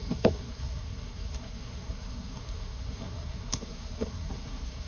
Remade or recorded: remade